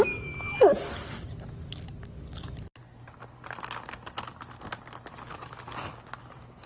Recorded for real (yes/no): yes